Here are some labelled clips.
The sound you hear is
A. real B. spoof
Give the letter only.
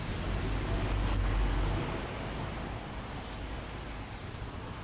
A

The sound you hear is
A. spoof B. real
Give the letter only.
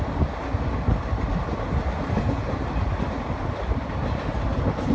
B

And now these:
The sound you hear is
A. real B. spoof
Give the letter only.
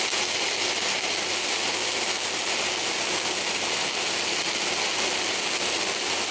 A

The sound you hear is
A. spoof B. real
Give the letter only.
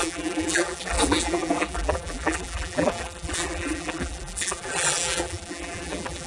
A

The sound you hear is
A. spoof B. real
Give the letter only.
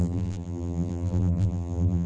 A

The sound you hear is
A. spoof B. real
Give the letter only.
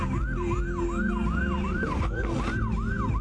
B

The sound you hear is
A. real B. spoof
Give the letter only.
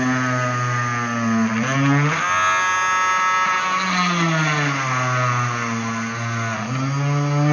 A